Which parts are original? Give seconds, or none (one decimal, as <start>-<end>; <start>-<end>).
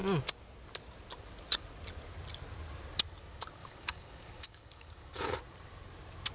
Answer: 0.0-3.6; 5.4-6.3